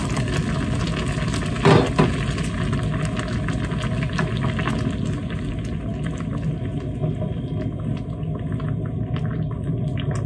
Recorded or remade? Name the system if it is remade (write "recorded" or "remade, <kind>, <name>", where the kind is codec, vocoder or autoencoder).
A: recorded